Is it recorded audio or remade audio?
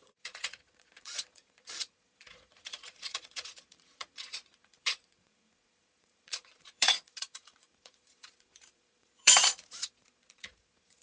remade